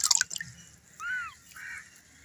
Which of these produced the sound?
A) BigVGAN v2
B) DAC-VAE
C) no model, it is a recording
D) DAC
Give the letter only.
C